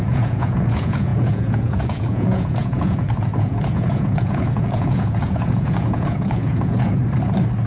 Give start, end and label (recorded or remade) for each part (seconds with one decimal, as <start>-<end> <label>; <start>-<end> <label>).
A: 0.0-7.0 remade; 7.0-7.7 recorded